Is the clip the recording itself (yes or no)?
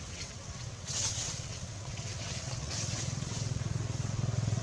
no